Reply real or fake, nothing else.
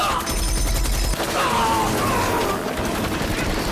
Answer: real